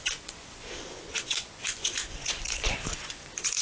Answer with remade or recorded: remade